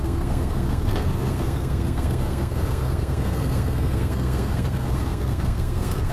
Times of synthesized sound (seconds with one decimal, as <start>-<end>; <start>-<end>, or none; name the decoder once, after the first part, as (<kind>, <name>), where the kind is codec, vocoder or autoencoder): 0.0-6.1 (codec, SNAC)

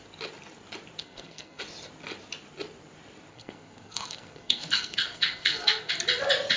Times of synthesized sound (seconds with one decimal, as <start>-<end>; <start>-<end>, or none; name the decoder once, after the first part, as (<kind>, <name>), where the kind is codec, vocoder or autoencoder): 1.0-1.6 (codec, SNAC); 3.3-5.9